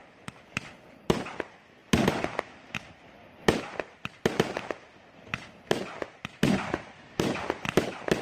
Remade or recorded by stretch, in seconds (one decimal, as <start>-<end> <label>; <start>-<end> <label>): 0.0-1.3 remade; 1.3-8.2 recorded